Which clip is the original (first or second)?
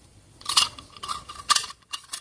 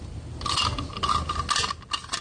second